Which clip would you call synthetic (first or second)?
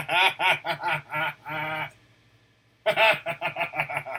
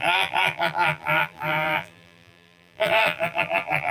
second